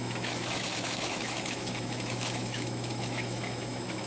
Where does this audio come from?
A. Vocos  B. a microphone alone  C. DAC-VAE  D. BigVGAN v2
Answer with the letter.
C